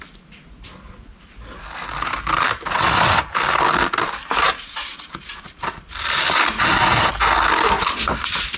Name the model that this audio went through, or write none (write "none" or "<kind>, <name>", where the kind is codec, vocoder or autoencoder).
none